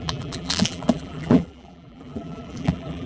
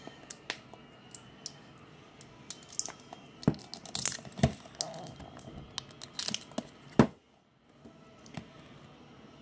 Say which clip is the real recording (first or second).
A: second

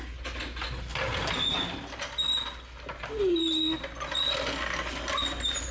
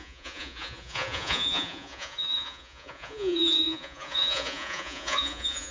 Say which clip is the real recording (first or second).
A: first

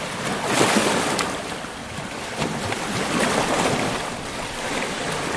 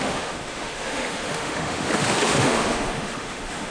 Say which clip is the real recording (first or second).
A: first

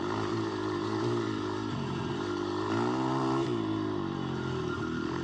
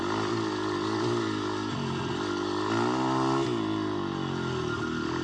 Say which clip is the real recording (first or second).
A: second